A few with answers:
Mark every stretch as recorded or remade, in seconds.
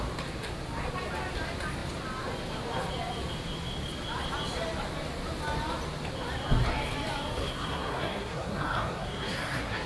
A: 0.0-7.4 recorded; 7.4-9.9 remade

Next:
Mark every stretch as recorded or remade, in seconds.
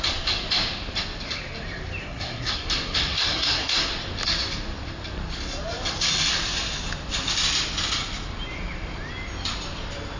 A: 0.0-2.0 recorded; 2.0-3.9 remade; 3.9-10.2 recorded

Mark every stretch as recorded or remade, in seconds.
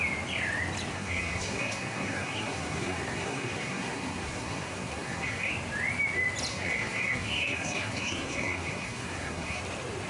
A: 0.0-0.9 recorded; 0.9-5.5 remade; 5.5-6.5 recorded; 6.5-9.6 remade; 9.6-10.1 recorded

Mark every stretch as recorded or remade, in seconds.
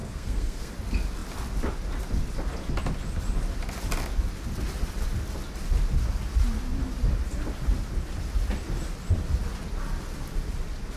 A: 0.0-0.7 remade; 0.7-11.0 recorded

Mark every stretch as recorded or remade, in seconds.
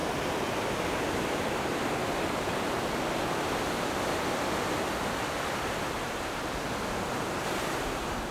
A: 0.0-8.3 recorded